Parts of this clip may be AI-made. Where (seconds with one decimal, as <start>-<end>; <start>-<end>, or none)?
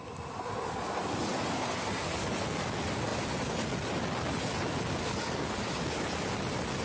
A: none